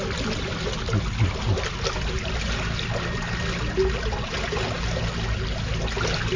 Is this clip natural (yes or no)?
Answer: yes